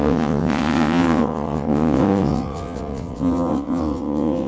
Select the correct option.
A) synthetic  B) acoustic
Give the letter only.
A